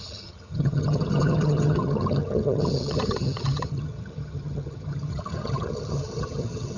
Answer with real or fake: fake